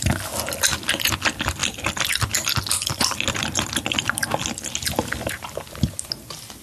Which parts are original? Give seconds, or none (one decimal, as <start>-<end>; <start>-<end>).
0.0-6.6